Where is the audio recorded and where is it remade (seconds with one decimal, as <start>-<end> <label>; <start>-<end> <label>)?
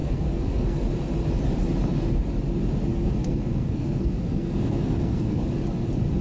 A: 0.0-0.9 remade; 0.9-2.9 recorded; 2.9-5.4 remade; 5.4-6.2 recorded